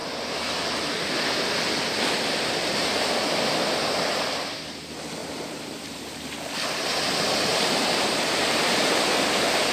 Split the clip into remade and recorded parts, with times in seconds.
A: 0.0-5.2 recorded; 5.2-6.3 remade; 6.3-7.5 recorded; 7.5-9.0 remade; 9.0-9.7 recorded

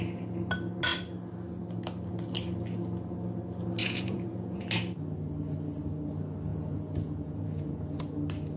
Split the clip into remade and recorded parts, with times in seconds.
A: 0.0-3.8 recorded; 3.8-4.6 remade; 4.6-6.5 recorded; 6.5-8.0 remade; 8.0-8.6 recorded

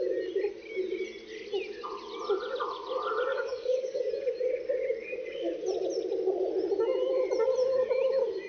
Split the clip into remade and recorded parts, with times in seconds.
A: 0.0-3.3 recorded; 3.3-4.1 remade; 4.1-8.5 recorded